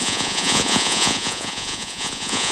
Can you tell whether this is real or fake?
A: fake